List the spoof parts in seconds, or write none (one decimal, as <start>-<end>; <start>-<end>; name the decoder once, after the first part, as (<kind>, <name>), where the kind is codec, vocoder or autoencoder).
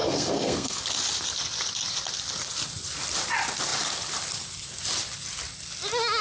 0.0-0.8 (codec, SNAC)